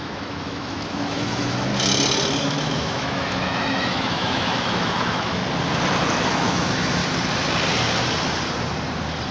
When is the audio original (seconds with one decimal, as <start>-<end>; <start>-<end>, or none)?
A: 1.7-2.4; 5.4-6.3; 7.0-9.3